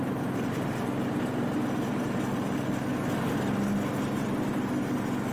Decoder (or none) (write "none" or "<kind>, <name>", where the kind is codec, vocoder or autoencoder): none